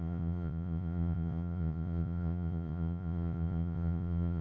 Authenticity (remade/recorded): remade